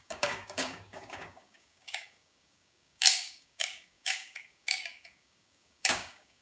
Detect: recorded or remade remade